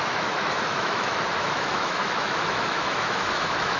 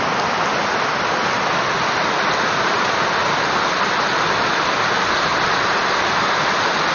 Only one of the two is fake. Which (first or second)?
first